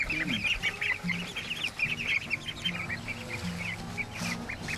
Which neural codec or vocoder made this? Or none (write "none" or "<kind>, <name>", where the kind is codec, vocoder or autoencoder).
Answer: none